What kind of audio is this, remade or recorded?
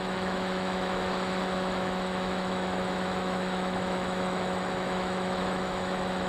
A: remade